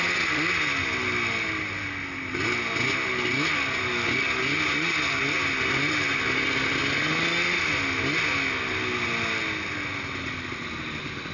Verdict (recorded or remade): recorded